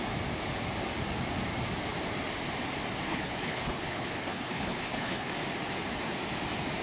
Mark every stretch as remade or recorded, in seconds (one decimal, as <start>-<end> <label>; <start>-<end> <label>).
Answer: 0.0-3.1 recorded; 3.1-5.3 remade; 5.3-6.8 recorded